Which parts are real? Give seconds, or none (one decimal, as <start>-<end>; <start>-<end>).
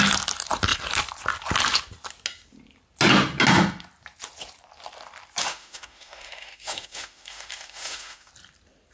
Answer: 0.0-5.4; 8.3-8.9